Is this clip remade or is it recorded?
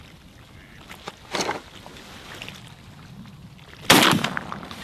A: recorded